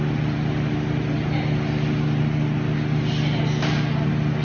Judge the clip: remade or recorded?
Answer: recorded